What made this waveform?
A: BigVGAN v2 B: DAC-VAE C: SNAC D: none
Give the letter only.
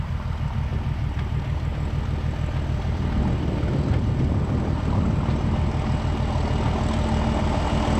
D